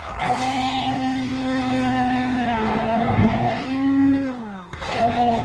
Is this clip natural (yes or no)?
no